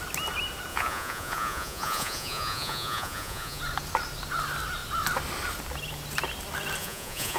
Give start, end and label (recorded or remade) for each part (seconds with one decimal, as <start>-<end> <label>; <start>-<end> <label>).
0.0-0.7 recorded; 0.7-3.6 remade; 3.6-6.8 recorded; 6.8-7.4 remade